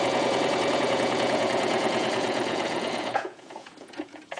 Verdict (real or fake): fake